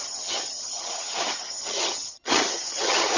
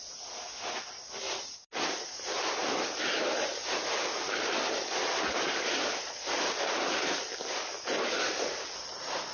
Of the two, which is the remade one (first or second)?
first